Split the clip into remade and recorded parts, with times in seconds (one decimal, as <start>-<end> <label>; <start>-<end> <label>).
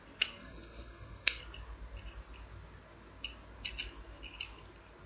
0.0-0.4 recorded; 0.4-1.4 remade; 1.4-5.1 recorded